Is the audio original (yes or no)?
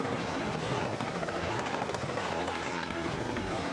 no